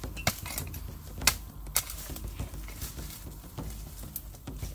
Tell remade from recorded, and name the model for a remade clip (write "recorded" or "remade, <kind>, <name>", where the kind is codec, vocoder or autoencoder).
recorded